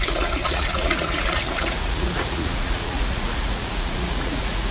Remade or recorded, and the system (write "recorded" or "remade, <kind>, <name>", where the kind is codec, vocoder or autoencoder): remade, vocoder, Vocos